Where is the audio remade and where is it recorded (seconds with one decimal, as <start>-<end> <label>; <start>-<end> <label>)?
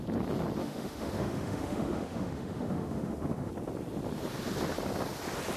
0.0-0.6 recorded; 0.6-3.5 remade; 3.5-5.6 recorded